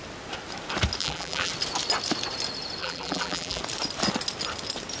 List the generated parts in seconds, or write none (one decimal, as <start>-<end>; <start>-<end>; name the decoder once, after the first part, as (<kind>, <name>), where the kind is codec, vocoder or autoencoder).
1.0-1.5 (vocoder, BigVGAN v2); 2.8-3.6